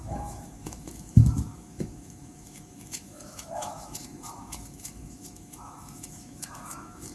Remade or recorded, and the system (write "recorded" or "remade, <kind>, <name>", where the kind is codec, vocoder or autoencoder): remade, autoencoder, DAC-VAE